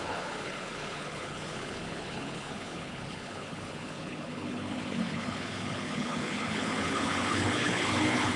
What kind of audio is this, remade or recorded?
remade